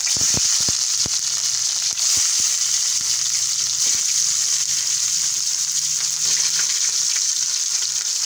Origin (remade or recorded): recorded